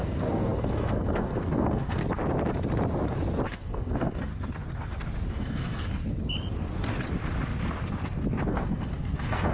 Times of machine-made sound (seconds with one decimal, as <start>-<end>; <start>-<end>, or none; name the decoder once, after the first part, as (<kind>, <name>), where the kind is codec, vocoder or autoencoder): 0.0-2.0 (codec, SNAC); 3.5-4.3; 5.3-6.0; 8.5-9.5